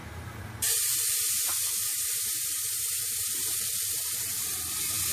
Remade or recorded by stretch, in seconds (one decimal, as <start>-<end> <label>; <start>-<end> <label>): 0.0-1.4 remade; 1.4-1.9 recorded; 1.9-4.4 remade; 4.4-5.1 recorded